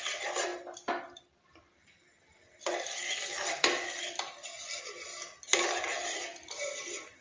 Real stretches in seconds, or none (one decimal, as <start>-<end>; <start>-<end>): 0.0-7.2